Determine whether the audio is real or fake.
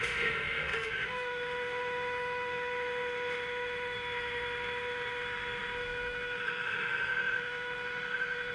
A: fake